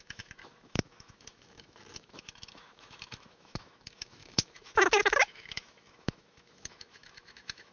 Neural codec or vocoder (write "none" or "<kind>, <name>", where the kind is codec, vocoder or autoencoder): autoencoder, DAC-VAE